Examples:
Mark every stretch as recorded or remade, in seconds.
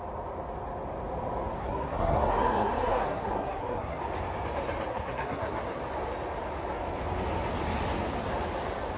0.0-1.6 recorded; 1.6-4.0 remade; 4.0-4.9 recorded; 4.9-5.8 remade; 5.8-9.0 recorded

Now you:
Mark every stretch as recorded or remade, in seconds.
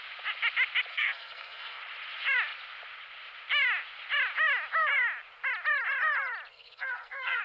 0.0-0.9 recorded; 0.9-1.8 remade; 1.8-6.5 recorded; 6.5-7.4 remade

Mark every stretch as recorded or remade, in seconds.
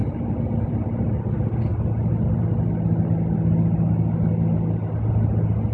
0.0-5.7 recorded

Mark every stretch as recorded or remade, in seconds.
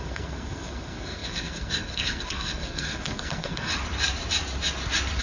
0.0-3.7 remade; 3.7-5.2 recorded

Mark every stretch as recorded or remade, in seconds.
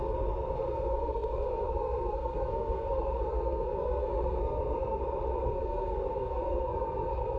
0.0-5.0 remade; 5.0-5.5 recorded; 5.5-7.4 remade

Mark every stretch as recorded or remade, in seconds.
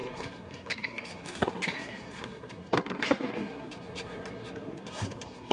0.0-5.5 remade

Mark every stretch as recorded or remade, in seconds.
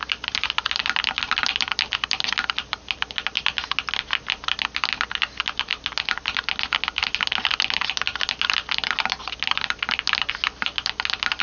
0.0-11.4 recorded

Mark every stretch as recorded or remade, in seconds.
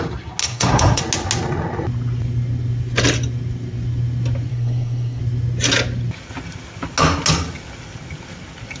0.0-0.4 recorded; 0.4-1.0 remade; 1.0-4.5 recorded; 4.5-5.2 remade; 5.2-8.8 recorded